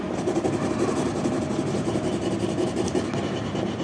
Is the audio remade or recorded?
recorded